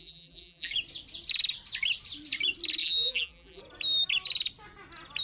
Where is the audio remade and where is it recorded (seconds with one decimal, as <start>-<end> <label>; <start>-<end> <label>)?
0.0-0.7 remade; 0.7-2.8 recorded; 2.8-3.6 remade; 3.6-5.2 recorded